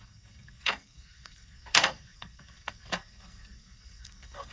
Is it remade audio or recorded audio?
remade